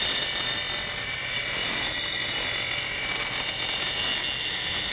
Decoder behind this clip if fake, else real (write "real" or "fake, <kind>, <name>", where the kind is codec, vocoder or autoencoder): real